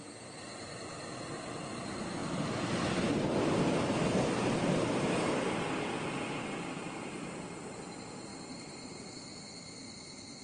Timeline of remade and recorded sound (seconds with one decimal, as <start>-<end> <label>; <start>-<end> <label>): 0.0-8.3 recorded; 8.3-9.1 remade; 9.1-10.4 recorded